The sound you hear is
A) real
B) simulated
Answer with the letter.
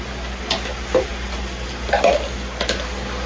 A